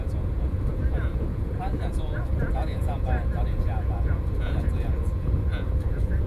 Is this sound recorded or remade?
remade